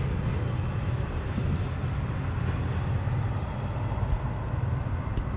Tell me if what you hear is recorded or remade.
recorded